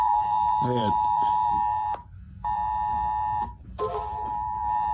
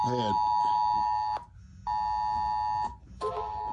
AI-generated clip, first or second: first